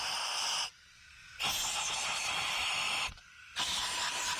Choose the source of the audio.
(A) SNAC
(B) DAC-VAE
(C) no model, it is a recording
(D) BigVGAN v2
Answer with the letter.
C